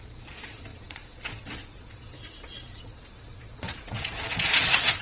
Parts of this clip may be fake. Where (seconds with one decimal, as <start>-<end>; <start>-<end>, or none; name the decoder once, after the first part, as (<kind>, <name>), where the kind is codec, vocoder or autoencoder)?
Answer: 0.0-5.0 (vocoder, Vocos)